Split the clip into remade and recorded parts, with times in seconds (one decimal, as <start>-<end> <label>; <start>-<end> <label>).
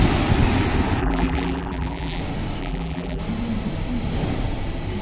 0.0-1.0 recorded; 1.0-2.2 remade; 2.2-2.6 recorded; 2.6-3.2 remade; 3.2-5.0 recorded